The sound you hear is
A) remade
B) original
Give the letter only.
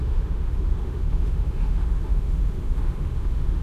A